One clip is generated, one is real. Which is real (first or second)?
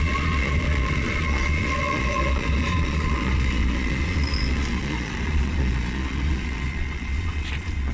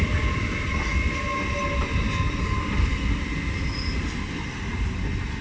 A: second